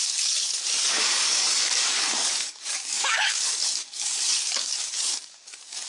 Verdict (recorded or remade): remade